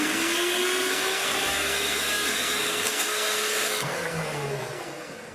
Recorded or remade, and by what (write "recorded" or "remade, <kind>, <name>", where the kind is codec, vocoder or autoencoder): remade, codec, SNAC